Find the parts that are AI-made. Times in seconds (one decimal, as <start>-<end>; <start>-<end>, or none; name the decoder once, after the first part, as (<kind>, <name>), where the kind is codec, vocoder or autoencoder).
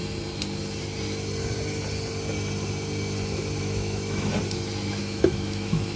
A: 3.6-4.3 (autoencoder, DAC-VAE); 5.0-6.0